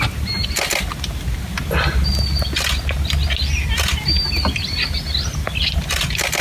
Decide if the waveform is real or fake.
real